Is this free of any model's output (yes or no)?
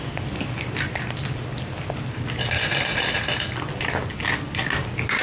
yes